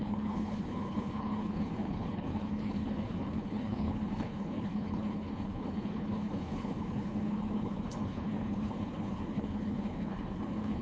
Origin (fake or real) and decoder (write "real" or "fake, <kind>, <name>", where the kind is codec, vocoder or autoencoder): fake, codec, HILCodec